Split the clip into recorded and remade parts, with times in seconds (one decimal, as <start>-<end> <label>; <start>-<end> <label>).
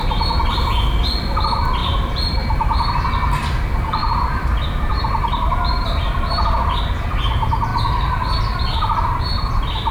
0.0-1.8 recorded; 1.8-2.9 remade; 2.9-4.0 recorded; 4.0-6.8 remade; 6.8-9.9 recorded